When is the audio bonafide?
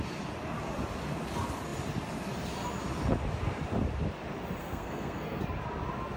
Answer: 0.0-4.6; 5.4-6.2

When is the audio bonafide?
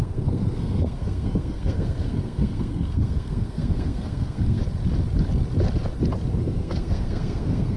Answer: 4.6-6.4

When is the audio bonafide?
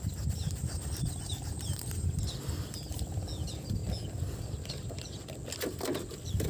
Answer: 0.0-0.4; 2.2-6.5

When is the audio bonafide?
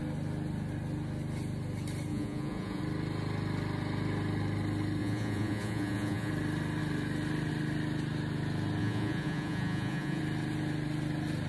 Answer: 0.0-2.1; 2.8-5.0; 6.3-8.8; 10.2-11.5